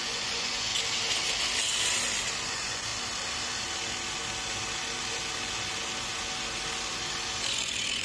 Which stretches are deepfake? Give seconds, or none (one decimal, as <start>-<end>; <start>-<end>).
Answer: 0.0-0.7; 2.5-2.9; 7.5-8.0